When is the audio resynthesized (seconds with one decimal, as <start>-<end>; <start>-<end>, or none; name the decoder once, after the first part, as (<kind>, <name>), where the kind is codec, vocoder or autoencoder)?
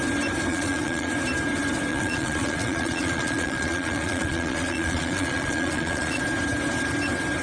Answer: 0.5-1.1 (vocoder, Vocos); 1.9-6.2